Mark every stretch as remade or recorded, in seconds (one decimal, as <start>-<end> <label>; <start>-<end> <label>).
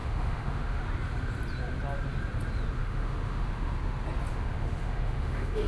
0.0-0.8 remade; 0.8-2.8 recorded; 2.8-3.7 remade; 3.7-4.3 recorded; 4.3-5.7 remade